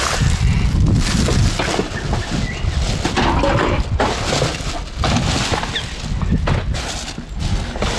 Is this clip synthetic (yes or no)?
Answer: no